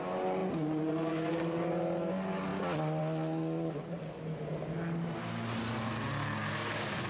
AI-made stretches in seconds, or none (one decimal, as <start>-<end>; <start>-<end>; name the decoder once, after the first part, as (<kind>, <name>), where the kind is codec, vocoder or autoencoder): none